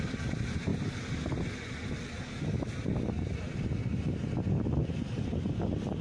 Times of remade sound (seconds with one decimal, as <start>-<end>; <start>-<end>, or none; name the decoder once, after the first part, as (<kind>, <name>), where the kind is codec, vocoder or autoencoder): none